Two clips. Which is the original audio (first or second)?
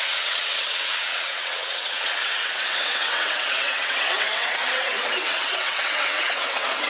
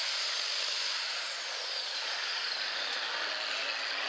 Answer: second